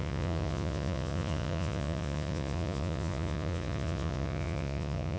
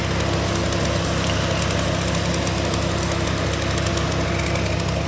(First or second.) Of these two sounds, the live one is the second